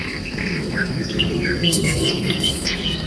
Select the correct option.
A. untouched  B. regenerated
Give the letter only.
B